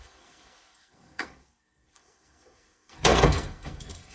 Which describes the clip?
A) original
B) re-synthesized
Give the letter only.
B